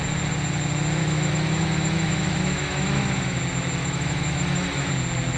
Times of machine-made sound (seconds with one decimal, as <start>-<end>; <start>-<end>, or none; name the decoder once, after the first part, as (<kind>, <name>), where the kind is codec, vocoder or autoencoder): 1.0-3.4 (autoencoder, DAC-VAE); 3.8-4.9